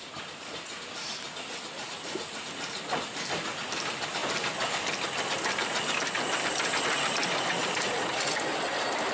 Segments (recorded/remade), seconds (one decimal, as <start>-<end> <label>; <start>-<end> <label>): 0.0-9.1 recorded